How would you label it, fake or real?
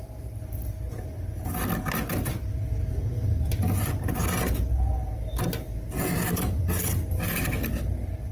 real